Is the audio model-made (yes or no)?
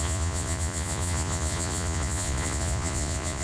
yes